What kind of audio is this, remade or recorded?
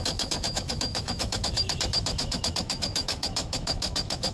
remade